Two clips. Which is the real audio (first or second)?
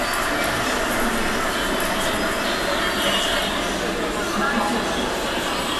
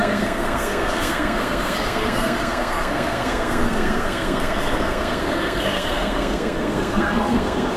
first